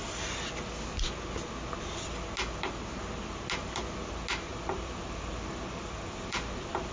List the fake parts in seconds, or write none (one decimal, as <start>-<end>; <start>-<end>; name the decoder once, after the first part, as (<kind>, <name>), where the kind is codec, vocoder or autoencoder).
4.5-6.9 (vocoder, BigVGAN v2)